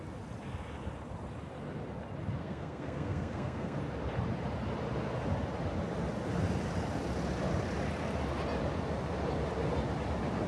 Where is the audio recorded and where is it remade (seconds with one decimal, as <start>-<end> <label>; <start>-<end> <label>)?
0.0-2.4 recorded; 2.4-3.8 remade; 3.8-10.5 recorded